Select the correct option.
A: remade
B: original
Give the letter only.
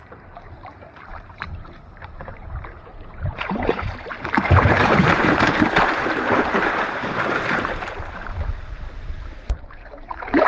A